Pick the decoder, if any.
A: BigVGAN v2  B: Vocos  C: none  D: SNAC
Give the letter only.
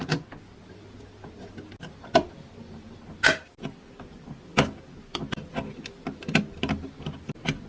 C